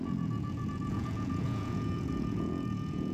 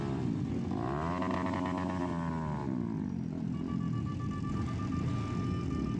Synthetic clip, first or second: first